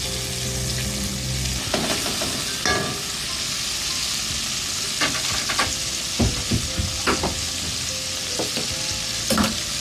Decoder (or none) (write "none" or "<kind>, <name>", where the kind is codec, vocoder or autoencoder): none